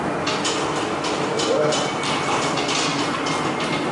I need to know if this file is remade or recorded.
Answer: recorded